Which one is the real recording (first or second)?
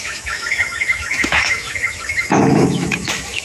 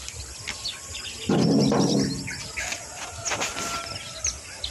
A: second